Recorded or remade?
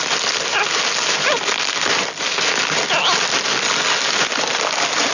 recorded